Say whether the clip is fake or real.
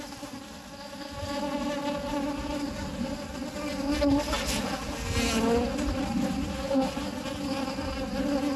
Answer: real